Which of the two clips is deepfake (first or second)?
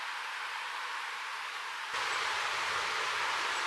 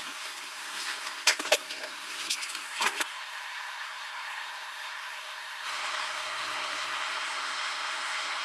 second